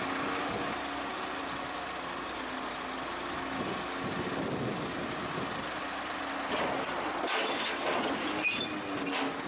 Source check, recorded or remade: recorded